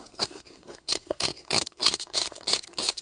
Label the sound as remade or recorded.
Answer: remade